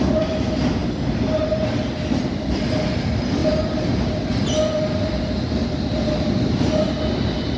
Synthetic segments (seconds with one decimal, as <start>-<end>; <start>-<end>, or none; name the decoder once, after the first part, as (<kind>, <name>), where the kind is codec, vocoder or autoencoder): none